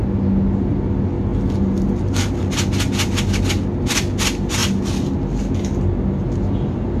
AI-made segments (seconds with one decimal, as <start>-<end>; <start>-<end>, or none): none